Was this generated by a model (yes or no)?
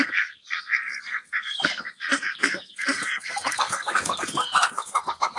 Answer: yes